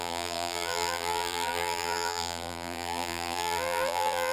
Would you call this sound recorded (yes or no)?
no